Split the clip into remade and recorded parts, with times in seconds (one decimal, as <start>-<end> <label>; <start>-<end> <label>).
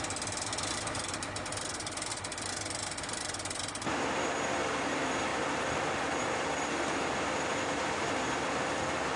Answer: 0.0-2.1 remade; 2.1-3.0 recorded; 3.0-9.2 remade